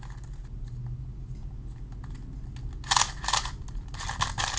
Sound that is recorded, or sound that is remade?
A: recorded